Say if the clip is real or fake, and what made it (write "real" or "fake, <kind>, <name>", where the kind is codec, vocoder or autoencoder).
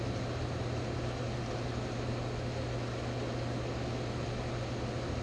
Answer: real